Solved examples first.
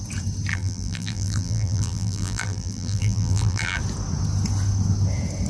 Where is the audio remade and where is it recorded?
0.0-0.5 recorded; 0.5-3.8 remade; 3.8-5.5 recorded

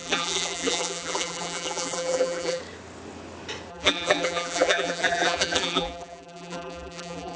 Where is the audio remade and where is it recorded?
0.0-2.6 remade; 2.6-3.7 recorded; 3.7-7.4 remade

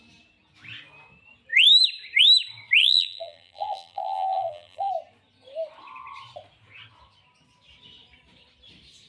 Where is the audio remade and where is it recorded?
0.0-2.8 recorded; 2.8-4.9 remade; 4.9-9.1 recorded

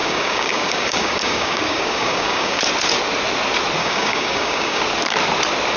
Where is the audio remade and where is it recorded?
0.0-2.6 remade; 2.6-3.8 recorded; 3.8-4.8 remade; 4.8-5.8 recorded